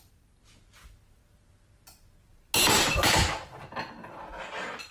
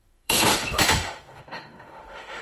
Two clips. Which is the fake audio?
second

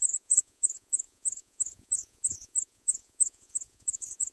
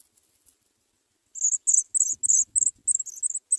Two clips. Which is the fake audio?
first